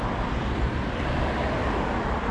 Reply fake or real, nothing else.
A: fake